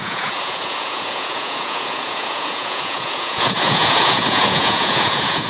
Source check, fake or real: fake